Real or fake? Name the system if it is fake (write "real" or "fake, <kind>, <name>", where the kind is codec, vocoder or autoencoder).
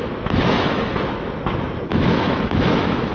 fake, autoencoder, DAC-VAE